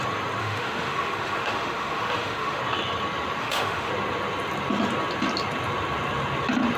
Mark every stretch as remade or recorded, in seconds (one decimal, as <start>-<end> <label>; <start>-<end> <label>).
0.0-0.4 recorded; 0.4-2.6 remade; 2.6-3.4 recorded; 3.4-3.9 remade; 3.9-6.8 recorded

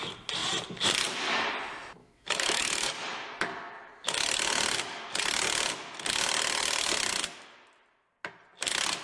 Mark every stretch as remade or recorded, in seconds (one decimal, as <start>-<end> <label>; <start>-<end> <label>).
0.0-2.0 recorded; 2.0-2.9 remade; 2.9-9.0 recorded

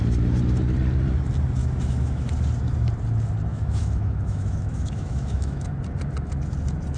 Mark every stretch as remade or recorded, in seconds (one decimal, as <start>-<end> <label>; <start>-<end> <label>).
0.0-1.6 recorded; 1.6-2.3 remade; 2.3-3.5 recorded; 3.5-5.7 remade; 5.7-7.0 recorded

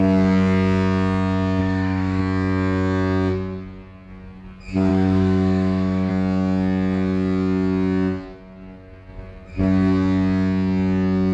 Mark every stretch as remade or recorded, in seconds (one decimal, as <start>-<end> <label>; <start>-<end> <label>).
0.0-1.6 recorded; 1.6-2.2 remade; 2.2-4.9 recorded; 4.9-6.1 remade; 6.1-11.3 recorded

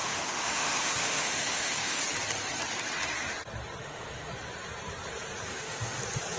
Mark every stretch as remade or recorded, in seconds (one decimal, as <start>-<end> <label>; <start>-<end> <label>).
0.0-2.0 remade; 2.0-3.8 recorded; 3.8-4.3 remade; 4.3-5.5 recorded; 5.5-6.0 remade; 6.0-6.4 recorded

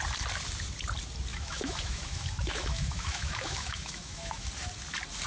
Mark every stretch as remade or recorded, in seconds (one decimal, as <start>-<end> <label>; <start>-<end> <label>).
0.0-1.3 recorded; 1.3-4.5 remade; 4.5-5.3 recorded